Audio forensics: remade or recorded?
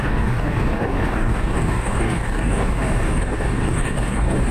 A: remade